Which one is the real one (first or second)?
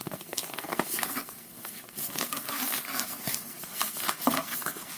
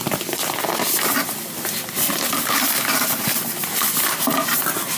second